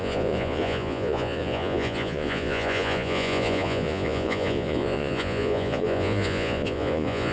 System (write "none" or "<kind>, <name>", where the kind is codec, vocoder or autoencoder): vocoder, Vocos